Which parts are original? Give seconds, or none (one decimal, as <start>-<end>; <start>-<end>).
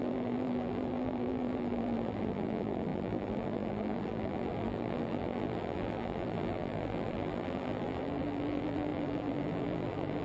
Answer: none